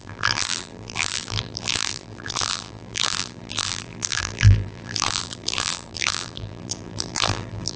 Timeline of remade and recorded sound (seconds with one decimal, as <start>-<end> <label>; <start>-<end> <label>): 0.0-7.8 remade